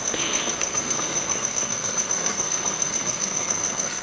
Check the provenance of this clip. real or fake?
fake